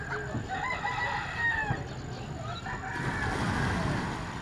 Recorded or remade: recorded